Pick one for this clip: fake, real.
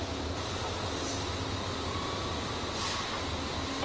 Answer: real